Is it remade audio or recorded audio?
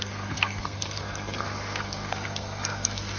remade